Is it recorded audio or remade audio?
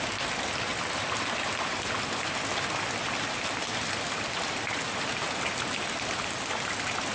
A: recorded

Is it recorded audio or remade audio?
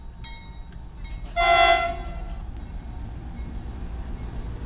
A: recorded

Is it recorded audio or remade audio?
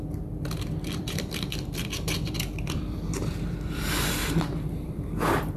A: remade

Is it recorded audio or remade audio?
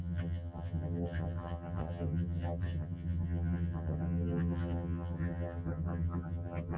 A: remade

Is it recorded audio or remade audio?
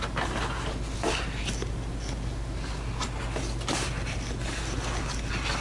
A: recorded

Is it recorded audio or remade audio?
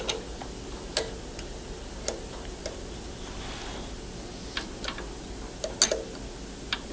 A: recorded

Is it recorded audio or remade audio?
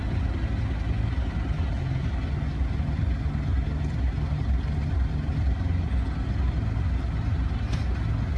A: recorded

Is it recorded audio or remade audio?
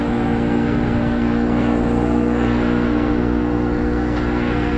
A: remade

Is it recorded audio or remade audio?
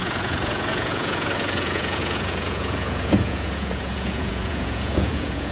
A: remade